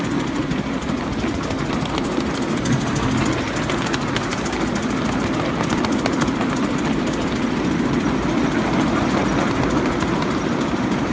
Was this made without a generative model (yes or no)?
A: yes